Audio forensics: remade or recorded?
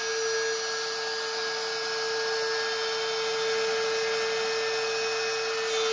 recorded